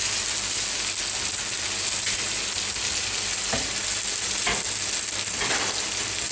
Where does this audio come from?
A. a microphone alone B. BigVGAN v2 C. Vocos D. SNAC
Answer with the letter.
A